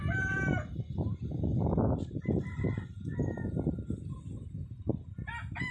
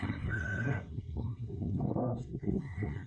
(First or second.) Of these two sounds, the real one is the first